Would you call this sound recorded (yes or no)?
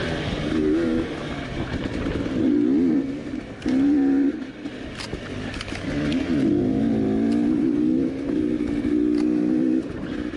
yes